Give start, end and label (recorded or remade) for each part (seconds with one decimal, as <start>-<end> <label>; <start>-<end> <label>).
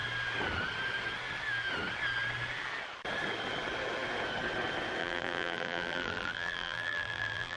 0.0-5.0 recorded; 5.0-7.6 remade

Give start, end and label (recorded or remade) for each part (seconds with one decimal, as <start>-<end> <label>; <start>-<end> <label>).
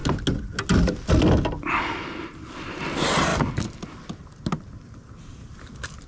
0.0-6.1 recorded